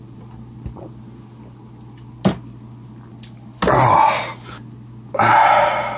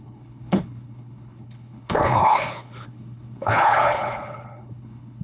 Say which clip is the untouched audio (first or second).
first